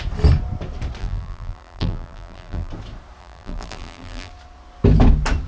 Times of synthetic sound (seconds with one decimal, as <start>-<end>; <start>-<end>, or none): 1.0-2.7; 3.2-4.3